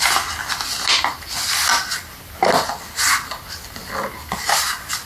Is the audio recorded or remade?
recorded